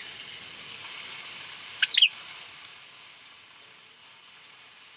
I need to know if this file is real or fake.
real